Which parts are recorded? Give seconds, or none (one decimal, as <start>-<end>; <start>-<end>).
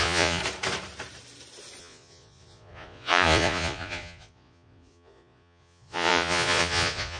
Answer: 0.4-1.8